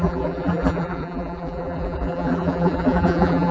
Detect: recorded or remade remade